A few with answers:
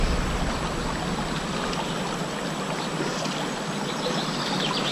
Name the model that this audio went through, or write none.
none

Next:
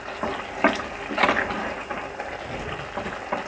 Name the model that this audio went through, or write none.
none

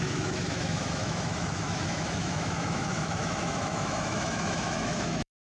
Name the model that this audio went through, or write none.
autoencoder, DAC-VAE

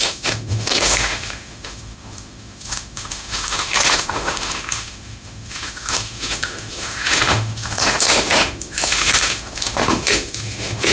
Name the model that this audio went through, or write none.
autoencoder, DAC-VAE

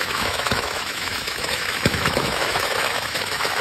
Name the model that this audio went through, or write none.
autoencoder, DAC-VAE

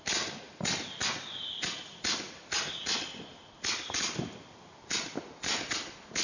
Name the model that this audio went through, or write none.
none